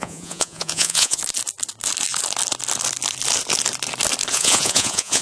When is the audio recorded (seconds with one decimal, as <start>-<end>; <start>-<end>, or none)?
1.2-4.3